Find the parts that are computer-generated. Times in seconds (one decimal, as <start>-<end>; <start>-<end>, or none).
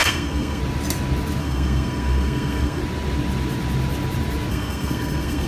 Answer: 0.0-0.6; 1.4-2.8; 4.5-5.5